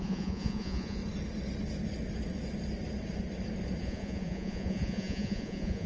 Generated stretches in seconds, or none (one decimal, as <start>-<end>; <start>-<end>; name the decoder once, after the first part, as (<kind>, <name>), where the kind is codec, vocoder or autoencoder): 0.0-1.0 (vocoder, Vocos); 3.8-5.9